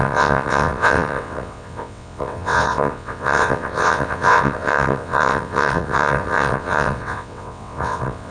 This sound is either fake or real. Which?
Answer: fake